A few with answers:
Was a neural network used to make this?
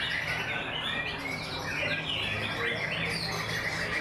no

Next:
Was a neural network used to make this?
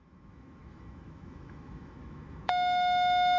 yes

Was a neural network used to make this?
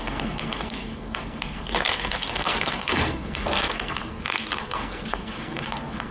yes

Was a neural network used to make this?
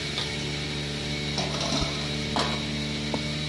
no